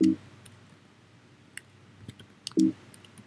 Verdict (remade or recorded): recorded